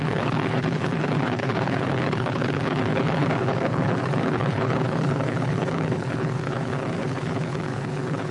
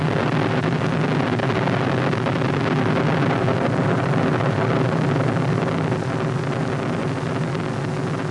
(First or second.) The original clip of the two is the second